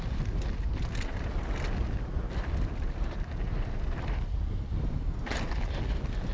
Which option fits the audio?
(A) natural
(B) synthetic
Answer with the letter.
A